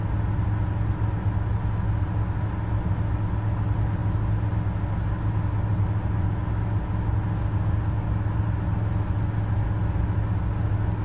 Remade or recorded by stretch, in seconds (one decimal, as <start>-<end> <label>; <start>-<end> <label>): 0.0-11.0 recorded